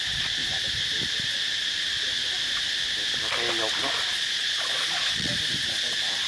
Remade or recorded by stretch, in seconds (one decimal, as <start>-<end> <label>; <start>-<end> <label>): 0.0-0.4 remade; 0.4-4.2 recorded; 4.2-5.3 remade; 5.3-5.8 recorded; 5.8-6.3 remade